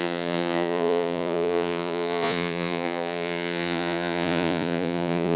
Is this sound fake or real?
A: fake